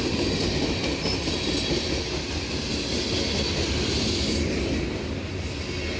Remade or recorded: recorded